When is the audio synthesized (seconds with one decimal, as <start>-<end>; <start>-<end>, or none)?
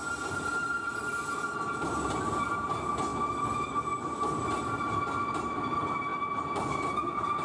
none